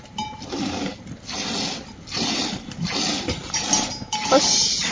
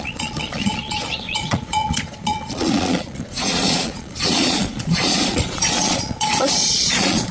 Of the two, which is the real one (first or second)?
first